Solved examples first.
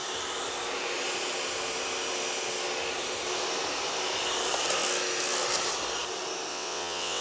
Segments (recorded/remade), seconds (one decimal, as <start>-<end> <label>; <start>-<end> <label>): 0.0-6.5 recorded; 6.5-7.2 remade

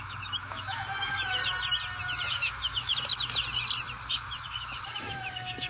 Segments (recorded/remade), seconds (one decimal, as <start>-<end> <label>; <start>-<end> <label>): 0.0-1.4 remade; 1.4-2.3 recorded; 2.3-2.9 remade; 2.9-4.1 recorded; 4.1-5.7 remade

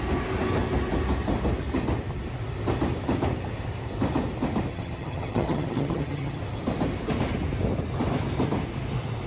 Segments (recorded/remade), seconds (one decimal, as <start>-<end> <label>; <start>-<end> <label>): 0.0-4.7 recorded; 4.7-6.4 remade; 6.4-9.3 recorded